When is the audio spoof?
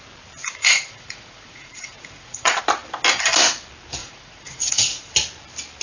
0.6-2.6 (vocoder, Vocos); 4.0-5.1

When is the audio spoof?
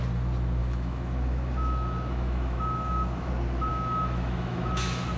0.6-3.3 (autoencoder, DAC-VAE); 3.7-5.2